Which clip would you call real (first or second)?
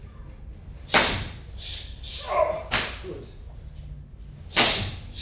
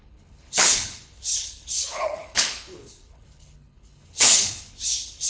first